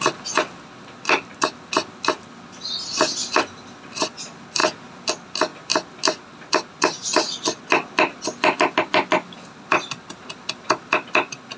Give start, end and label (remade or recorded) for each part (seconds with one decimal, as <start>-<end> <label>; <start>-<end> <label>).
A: 0.0-11.6 recorded